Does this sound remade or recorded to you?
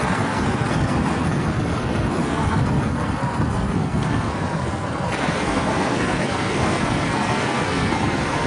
remade